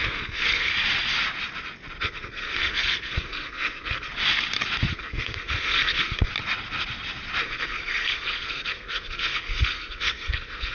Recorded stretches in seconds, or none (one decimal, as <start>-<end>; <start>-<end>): 0.7-2.0; 4.1-4.9; 6.3-7.4